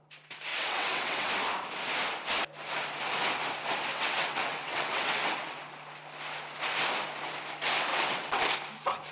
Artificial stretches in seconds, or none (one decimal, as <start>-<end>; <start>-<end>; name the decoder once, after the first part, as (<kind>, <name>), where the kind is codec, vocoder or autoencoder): 0.5-1.3 (vocoder, WaveNeXt); 3.9-5.6; 7.9-8.4